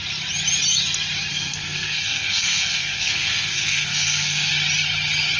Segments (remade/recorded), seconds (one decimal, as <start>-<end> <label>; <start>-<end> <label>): 0.0-1.3 recorded; 1.3-4.5 remade; 4.5-5.4 recorded